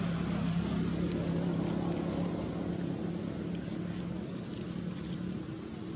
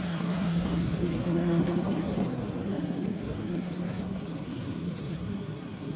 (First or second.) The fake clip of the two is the second